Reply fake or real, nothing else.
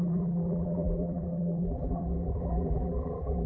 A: fake